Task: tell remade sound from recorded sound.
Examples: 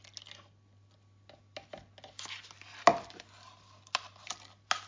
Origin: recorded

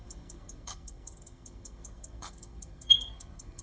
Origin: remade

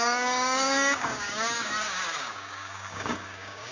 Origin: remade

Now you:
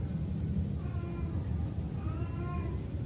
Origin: recorded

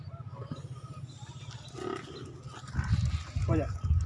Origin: recorded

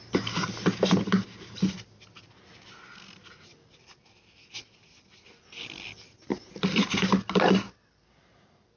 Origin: recorded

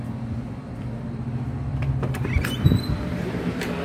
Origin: remade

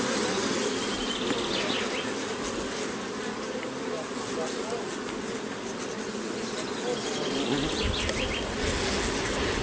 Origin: recorded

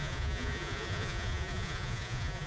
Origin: remade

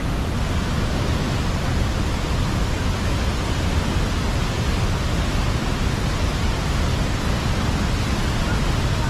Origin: recorded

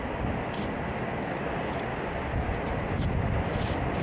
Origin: recorded